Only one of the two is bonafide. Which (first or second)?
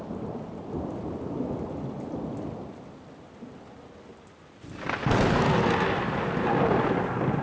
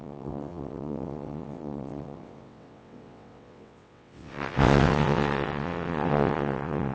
first